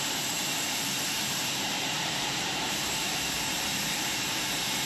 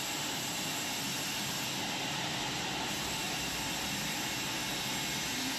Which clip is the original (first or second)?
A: second